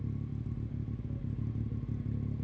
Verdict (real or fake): real